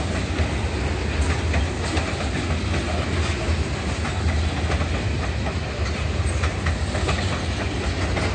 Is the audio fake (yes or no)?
no